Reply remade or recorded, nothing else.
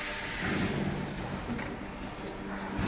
recorded